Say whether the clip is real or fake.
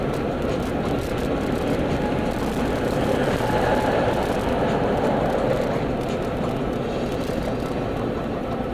real